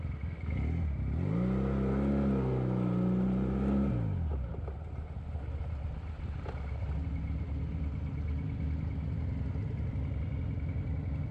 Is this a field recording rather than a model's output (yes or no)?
yes